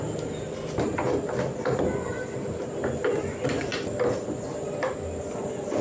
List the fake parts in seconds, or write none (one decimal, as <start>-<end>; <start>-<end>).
none